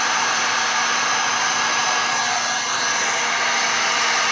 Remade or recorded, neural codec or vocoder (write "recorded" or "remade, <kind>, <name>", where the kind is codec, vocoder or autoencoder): recorded